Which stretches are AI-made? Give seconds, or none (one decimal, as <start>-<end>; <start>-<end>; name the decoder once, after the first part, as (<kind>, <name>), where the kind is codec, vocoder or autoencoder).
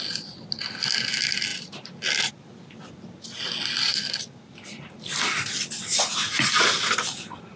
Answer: 1.5-2.3 (vocoder, BigVGAN v2)